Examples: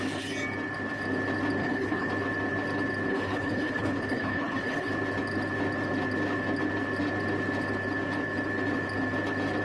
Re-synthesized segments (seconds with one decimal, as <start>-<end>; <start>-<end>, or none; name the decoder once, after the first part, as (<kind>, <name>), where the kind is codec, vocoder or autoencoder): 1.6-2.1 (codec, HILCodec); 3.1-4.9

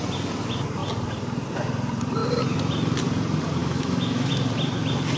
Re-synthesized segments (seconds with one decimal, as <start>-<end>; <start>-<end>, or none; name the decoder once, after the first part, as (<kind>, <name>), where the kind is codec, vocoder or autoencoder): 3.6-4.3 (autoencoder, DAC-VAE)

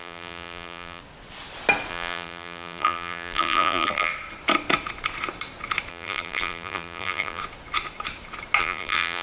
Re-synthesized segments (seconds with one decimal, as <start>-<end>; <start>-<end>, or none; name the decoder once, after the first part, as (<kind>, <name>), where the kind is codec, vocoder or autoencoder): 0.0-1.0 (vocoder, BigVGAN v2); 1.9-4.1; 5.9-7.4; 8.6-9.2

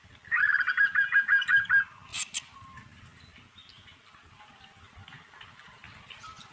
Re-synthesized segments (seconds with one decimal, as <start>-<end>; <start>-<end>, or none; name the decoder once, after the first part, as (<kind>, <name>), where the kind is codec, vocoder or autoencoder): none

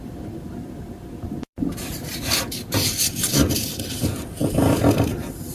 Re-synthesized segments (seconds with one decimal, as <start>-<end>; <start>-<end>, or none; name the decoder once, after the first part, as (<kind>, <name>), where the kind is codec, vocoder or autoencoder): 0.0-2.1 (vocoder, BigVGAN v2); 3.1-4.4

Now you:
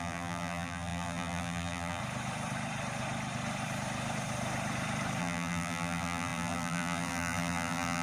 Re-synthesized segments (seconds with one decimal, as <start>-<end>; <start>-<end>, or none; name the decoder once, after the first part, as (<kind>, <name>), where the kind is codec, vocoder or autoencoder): 0.0-2.0 (vocoder, BigVGAN v2); 5.2-8.0